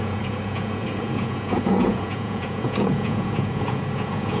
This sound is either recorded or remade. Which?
remade